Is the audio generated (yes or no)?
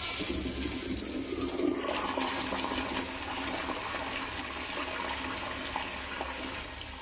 no